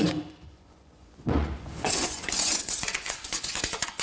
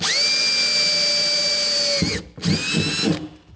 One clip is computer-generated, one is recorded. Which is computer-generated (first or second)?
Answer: first